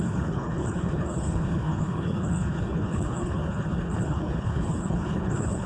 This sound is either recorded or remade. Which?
remade